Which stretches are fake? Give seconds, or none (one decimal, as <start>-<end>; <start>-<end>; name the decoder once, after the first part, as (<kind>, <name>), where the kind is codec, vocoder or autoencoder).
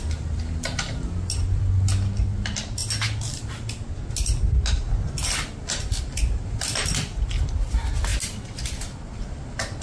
none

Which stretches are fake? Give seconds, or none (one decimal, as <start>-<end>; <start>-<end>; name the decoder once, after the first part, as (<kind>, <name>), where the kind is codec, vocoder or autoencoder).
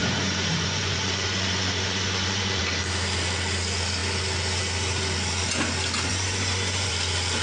0.0-2.6 (vocoder, Vocos); 6.1-6.9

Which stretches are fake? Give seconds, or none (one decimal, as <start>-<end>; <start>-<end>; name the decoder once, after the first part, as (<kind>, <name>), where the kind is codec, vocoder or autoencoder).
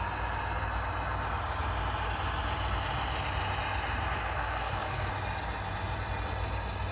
4.2-5.1 (codec, SNAC)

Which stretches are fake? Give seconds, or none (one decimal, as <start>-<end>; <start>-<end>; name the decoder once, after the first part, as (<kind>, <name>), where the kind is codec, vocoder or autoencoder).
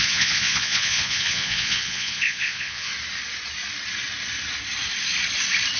0.0-2.9 (vocoder, Vocos)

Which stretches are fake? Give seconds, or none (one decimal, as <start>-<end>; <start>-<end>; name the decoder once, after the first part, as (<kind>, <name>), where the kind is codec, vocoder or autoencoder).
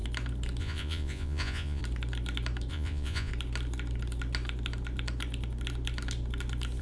0.6-1.8 (vocoder, Vocos); 2.7-3.3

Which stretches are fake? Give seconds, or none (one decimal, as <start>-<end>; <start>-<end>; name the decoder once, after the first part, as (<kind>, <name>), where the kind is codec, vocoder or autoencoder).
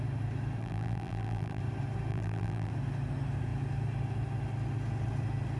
0.6-1.6 (vocoder, BigVGAN v2); 2.1-2.7